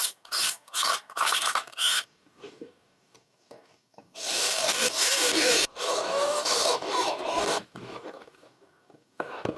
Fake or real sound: fake